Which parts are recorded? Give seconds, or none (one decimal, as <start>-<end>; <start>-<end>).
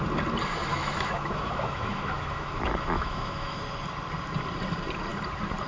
0.0-0.7; 3.6-5.7